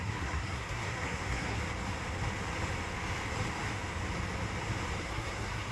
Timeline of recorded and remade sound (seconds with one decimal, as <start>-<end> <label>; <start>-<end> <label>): 0.0-1.6 remade; 1.6-5.0 recorded; 5.0-5.7 remade